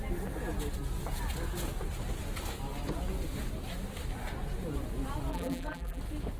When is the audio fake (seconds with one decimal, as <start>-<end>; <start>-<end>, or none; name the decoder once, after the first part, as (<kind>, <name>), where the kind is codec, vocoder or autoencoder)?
5.3-6.0 (vocoder, BigVGAN v2)